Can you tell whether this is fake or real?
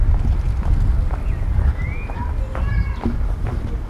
real